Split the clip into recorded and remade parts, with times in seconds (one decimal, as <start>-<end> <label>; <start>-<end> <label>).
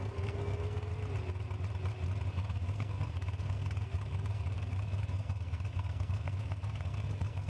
0.0-0.9 remade; 0.9-2.3 recorded; 2.3-7.5 remade